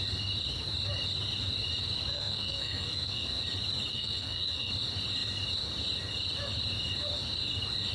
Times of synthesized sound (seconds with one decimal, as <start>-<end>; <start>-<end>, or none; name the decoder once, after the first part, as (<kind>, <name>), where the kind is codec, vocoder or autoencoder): 2.1-3.4 (codec, SNAC); 3.9-4.7